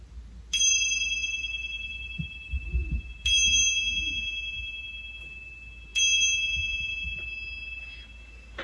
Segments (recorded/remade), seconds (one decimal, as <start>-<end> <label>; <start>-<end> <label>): 0.0-1.2 recorded; 1.2-2.7 remade; 2.7-8.6 recorded